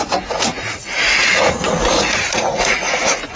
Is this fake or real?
fake